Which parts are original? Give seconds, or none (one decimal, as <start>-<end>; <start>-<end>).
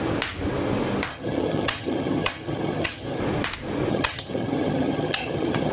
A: 0.0-1.1; 3.2-3.9